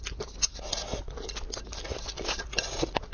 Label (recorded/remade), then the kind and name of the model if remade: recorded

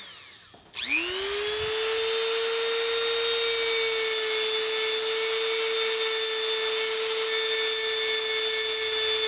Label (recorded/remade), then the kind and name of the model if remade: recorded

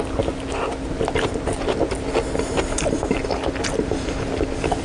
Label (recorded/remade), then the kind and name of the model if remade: recorded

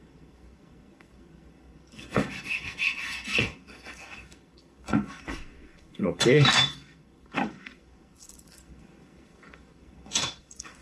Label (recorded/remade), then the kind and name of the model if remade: remade, codec, SNAC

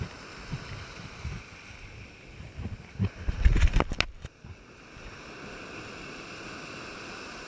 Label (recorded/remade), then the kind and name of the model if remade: recorded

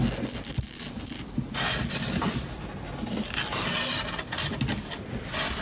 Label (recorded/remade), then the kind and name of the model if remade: recorded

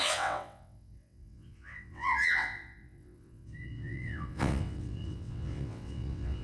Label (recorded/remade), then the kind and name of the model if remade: remade, vocoder, WaveNeXt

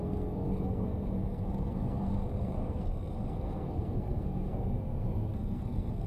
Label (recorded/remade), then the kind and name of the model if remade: remade, codec, SNAC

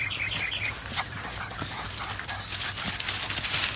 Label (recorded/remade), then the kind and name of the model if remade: remade, vocoder, BigVGAN v2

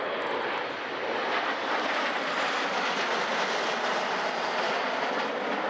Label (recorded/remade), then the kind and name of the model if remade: recorded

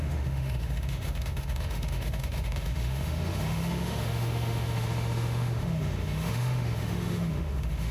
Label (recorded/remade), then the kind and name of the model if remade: remade, autoencoder, DAC-VAE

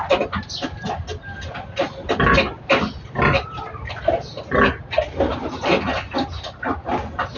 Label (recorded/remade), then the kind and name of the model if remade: recorded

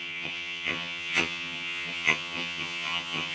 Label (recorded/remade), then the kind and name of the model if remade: remade, vocoder, HiFi-GAN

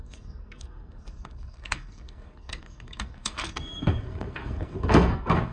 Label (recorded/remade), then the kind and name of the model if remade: remade, codec, SNAC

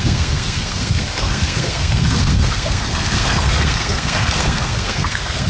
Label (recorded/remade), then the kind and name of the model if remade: remade, codec, SNAC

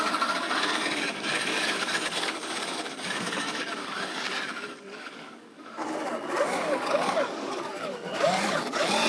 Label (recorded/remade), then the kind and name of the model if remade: remade, codec, DAC